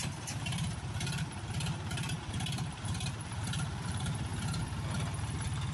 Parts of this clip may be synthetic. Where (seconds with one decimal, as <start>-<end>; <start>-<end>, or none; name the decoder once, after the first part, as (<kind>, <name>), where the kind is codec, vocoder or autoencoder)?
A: 0.0-4.3 (vocoder, BigVGAN v2); 5.2-5.7